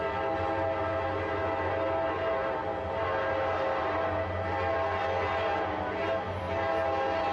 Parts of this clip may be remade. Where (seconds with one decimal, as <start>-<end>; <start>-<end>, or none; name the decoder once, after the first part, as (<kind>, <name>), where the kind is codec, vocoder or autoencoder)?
none